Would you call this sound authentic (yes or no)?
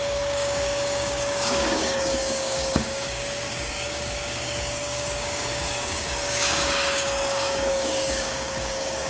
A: no